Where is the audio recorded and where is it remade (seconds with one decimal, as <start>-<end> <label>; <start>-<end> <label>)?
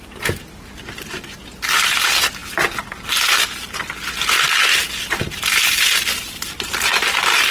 0.0-7.5 recorded